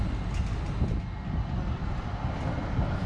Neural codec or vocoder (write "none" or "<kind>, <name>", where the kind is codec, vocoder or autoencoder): none